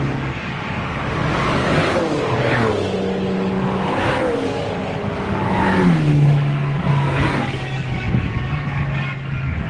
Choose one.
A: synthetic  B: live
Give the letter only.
A